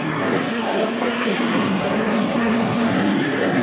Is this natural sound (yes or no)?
no